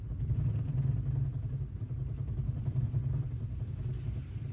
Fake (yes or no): no